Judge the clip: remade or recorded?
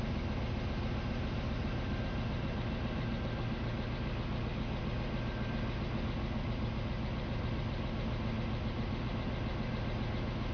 recorded